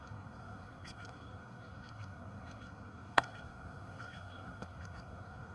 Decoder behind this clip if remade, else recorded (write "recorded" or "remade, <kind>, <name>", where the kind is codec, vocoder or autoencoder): remade, codec, SNAC